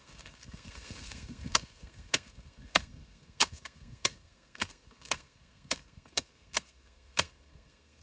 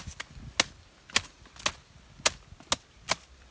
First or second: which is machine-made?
first